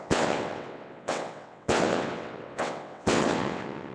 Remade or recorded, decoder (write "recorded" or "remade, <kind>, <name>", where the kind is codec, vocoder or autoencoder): remade, vocoder, WaveNeXt